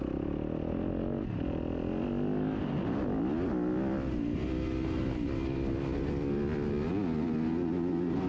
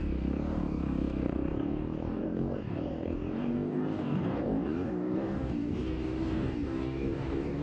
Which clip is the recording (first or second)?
first